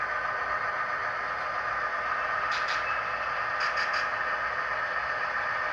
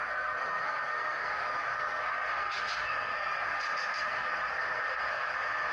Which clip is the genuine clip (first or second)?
first